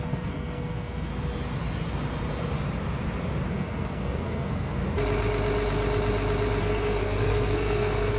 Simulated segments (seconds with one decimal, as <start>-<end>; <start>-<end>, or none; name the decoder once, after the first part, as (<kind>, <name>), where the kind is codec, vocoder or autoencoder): 0.0-1.1 (codec, SNAC); 3.5-4.8; 6.6-8.2